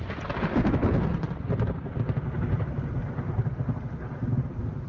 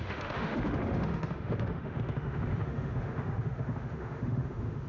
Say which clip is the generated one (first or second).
second